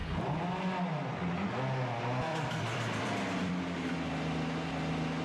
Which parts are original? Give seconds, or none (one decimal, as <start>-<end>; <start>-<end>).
0.0-2.3; 3.5-5.2